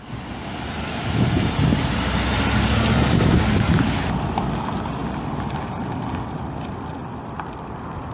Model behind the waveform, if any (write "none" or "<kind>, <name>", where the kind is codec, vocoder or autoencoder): none